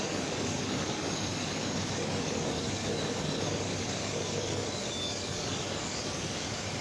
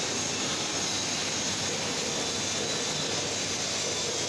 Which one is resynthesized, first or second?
first